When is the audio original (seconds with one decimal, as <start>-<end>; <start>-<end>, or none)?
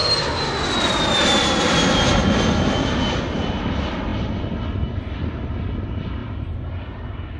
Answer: 0.0-6.2; 7.0-7.4